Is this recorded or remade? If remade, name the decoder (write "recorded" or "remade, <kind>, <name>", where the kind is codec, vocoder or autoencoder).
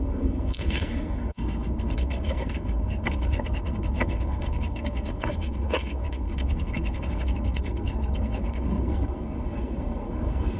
remade, codec, SNAC